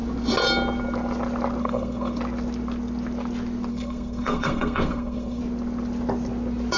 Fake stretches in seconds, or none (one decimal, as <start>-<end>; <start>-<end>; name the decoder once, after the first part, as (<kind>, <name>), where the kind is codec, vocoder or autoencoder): 1.6-2.2 (codec, SNAC); 3.7-5.4